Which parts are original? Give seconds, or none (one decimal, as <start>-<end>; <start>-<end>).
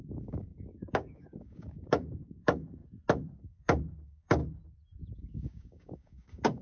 2.8-3.4; 4.4-5.1